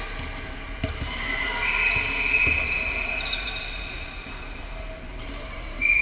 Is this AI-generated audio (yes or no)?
no